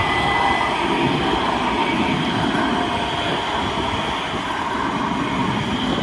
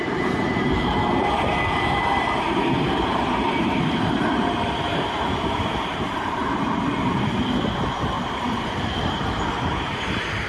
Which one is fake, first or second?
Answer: second